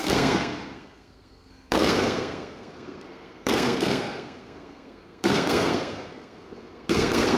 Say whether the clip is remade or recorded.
remade